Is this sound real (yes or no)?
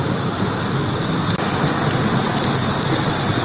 yes